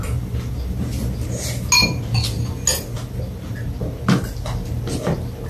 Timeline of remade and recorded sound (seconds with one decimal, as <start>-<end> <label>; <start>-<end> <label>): 0.0-5.5 recorded